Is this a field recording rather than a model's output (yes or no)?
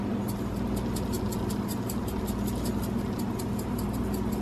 yes